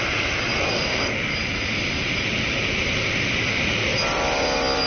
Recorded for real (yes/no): yes